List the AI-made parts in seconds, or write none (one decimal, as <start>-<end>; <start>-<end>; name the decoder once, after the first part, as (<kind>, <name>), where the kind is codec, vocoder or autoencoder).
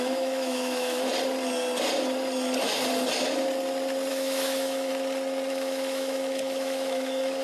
0.0-1.1 (autoencoder, DAC-VAE); 4.1-4.9; 5.5-7.4